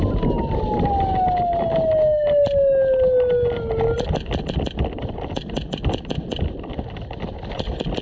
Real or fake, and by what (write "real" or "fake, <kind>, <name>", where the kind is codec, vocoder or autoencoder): real